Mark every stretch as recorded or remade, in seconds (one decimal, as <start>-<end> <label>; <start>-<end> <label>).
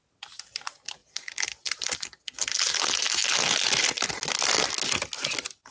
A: 0.0-5.7 recorded